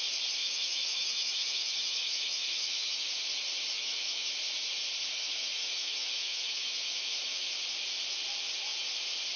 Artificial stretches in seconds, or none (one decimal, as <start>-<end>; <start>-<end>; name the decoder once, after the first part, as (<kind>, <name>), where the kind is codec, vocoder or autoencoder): 0.4-3.1 (autoencoder, DAC-VAE); 3.7-4.3; 5.1-7.5